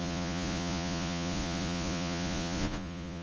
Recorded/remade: remade